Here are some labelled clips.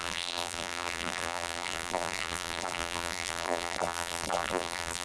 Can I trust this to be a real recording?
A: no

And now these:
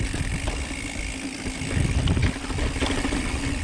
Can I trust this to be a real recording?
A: yes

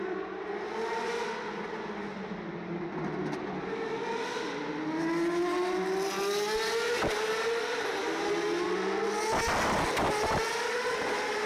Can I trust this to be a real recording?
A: yes